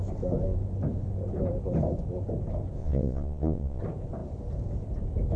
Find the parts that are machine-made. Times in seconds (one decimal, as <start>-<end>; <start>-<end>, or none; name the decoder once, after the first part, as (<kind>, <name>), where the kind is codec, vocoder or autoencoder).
2.8-3.8 (vocoder, Vocos)

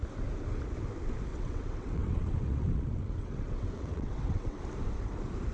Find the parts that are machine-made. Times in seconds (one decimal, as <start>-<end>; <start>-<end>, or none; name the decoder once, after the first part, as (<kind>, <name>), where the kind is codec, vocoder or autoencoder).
1.3-4.6 (vocoder, WaveNeXt)

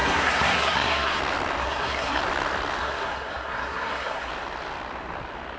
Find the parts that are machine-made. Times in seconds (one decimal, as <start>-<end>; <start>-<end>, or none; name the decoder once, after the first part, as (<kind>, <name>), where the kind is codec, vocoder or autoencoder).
0.0-1.2 (codec, SNAC); 1.6-2.2; 2.8-4.3

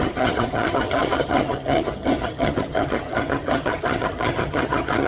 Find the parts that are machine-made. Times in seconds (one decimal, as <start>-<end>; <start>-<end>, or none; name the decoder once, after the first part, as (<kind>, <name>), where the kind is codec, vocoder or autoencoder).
0.0-5.1 (vocoder, HiFi-GAN)

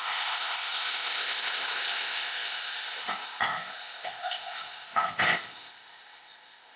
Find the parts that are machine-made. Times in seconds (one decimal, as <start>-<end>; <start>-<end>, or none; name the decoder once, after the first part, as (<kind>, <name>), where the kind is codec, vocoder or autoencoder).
0.0-6.8 (codec, ZipCodec)

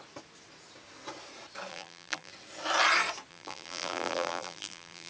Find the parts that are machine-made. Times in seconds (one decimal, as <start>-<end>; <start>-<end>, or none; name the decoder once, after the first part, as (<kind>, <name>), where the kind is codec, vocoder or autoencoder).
1.7-2.3 (vocoder, BigVGAN v2); 3.3-5.1